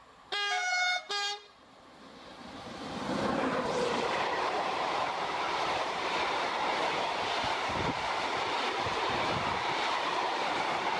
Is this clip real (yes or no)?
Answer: no